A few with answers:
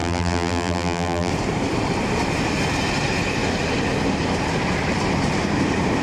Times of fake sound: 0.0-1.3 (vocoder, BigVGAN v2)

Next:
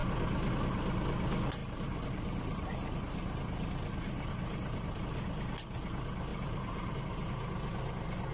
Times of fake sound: 1.6-5.0 (vocoder, BigVGAN v2); 6.3-6.9

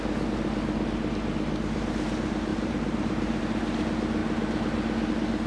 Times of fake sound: 2.5-3.4 (vocoder, BigVGAN v2)